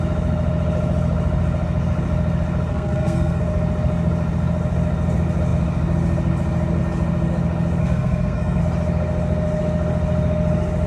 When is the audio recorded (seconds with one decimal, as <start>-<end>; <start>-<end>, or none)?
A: 0.0-2.7; 3.4-7.8; 8.6-10.9